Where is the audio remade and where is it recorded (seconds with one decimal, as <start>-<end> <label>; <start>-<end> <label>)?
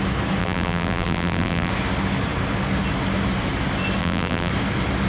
0.0-0.4 recorded; 0.4-1.7 remade; 1.7-4.0 recorded; 4.0-4.5 remade; 4.5-5.1 recorded